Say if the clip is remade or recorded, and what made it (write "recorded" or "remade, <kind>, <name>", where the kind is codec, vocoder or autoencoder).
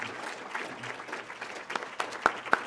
recorded